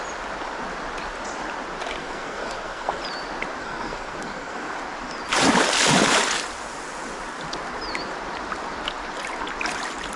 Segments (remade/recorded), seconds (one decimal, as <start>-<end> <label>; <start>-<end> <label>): 0.0-2.0 recorded; 2.0-3.0 remade; 3.0-3.6 recorded; 3.6-4.8 remade; 4.8-10.2 recorded